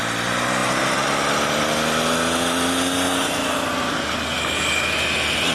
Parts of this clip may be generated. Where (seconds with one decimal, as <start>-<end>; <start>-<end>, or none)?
none